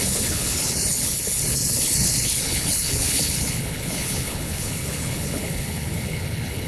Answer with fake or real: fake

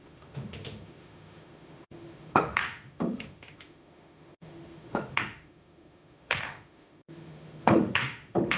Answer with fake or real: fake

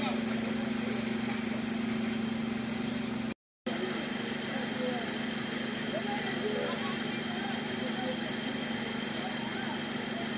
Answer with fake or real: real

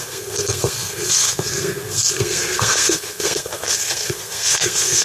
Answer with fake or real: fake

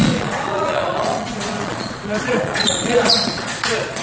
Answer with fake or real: fake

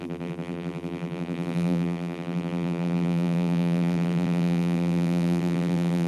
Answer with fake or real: fake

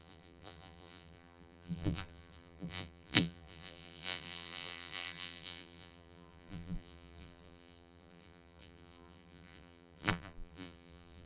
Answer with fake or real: fake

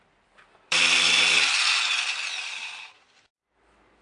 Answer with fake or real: fake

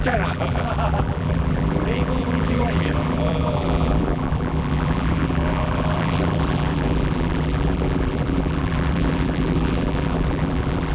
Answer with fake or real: fake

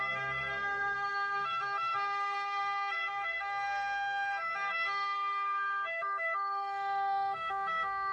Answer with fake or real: fake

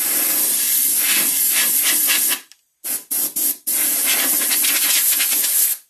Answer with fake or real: real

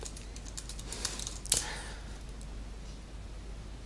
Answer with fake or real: real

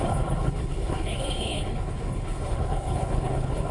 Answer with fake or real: fake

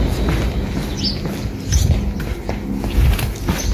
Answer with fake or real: real